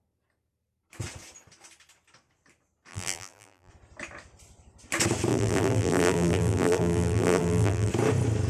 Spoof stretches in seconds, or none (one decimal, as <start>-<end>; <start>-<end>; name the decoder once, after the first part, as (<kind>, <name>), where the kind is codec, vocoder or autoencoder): 2.9-3.7 (vocoder, BigVGAN v2); 5.3-7.9